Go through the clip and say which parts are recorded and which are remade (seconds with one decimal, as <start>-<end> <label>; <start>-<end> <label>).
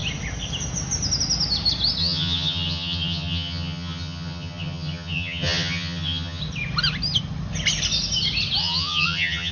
0.0-2.0 recorded; 2.0-6.4 remade; 6.4-8.6 recorded; 8.6-9.5 remade